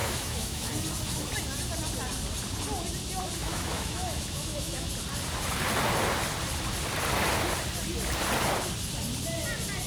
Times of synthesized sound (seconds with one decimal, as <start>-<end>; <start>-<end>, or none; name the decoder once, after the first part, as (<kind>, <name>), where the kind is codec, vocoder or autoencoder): 0.0-0.7 (autoencoder, DAC-VAE); 3.4-4.9